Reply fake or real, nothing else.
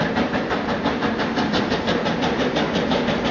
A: real